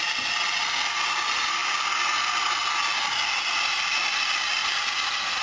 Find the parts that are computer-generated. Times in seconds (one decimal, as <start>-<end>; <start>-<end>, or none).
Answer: none